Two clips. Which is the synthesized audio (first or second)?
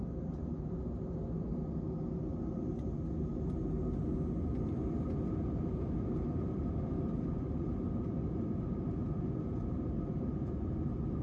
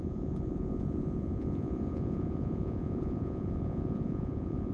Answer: second